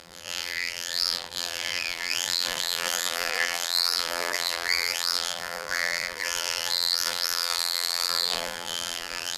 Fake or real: fake